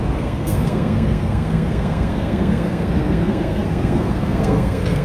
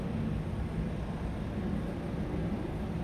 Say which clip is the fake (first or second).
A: first